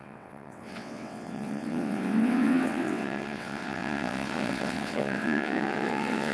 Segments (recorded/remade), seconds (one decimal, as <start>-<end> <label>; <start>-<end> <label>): 0.0-6.3 remade